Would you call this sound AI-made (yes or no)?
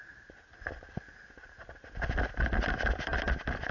no